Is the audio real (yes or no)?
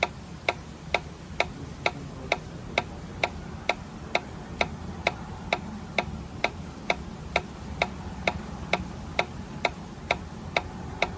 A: yes